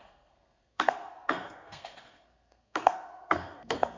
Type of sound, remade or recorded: remade